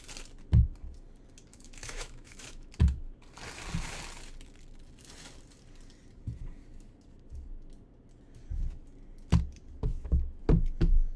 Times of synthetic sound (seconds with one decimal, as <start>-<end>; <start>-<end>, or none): 1.5-2.7; 9.9-10.4